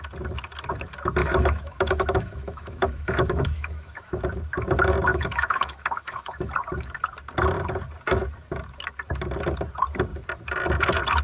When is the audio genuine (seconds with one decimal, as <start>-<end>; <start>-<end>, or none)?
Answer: 0.0-1.2; 4.1-5.1; 6.5-11.2